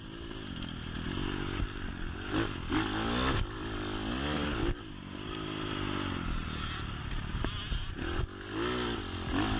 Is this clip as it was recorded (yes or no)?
yes